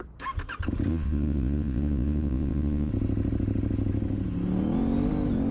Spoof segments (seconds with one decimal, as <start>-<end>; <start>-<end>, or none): 0.9-2.9